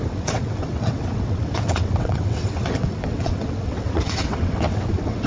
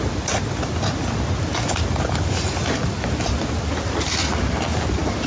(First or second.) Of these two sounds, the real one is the second